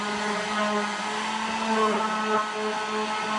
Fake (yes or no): no